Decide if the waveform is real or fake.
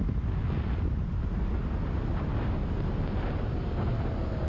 real